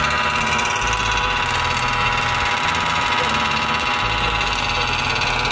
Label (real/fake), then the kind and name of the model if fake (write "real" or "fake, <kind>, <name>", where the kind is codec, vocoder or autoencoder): real